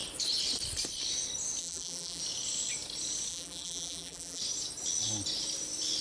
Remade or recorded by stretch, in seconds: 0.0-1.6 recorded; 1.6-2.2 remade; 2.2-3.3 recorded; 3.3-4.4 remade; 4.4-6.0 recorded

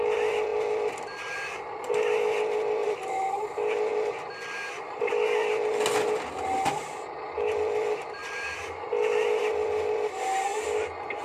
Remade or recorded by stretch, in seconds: 0.0-2.8 recorded; 2.8-3.4 remade; 3.4-11.2 recorded

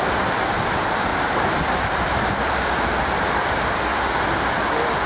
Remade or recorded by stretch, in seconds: 0.0-1.1 recorded; 1.1-4.1 remade; 4.1-5.1 recorded

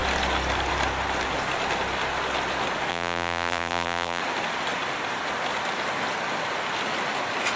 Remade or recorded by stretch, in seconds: 0.0-2.9 recorded; 2.9-4.2 remade; 4.2-7.6 recorded

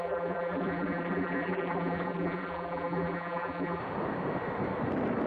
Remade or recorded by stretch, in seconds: 0.0-3.8 remade; 3.8-5.3 recorded

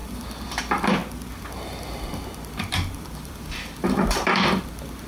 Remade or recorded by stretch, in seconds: 0.0-1.0 remade; 1.0-2.5 recorded; 2.5-5.1 remade